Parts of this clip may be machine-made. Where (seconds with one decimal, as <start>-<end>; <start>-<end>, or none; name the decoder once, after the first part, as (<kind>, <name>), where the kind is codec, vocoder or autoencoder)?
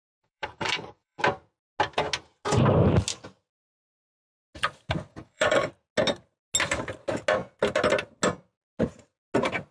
0.0-1.2 (codec, DAC); 5.1-5.7